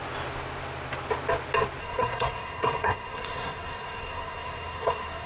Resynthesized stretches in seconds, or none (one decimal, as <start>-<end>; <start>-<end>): 1.8-5.3